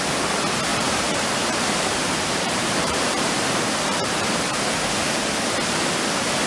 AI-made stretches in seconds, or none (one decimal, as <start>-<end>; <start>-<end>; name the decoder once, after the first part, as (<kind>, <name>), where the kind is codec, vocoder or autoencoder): 0.7-4.6 (vocoder, BigVGAN v2)